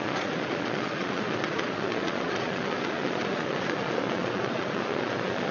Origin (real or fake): fake